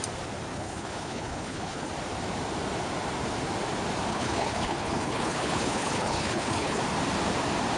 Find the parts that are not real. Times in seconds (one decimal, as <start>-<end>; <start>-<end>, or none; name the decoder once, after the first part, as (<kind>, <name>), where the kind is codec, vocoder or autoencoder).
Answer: 0.5-1.9 (codec, HILCodec); 4.1-6.8